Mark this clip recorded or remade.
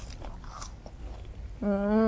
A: recorded